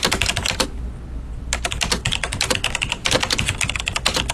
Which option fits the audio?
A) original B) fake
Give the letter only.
A